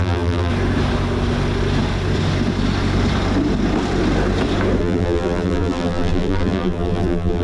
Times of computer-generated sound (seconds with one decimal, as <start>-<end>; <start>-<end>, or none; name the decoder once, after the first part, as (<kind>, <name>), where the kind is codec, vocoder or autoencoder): 0.0-0.5 (vocoder, BigVGAN v2); 4.8-7.4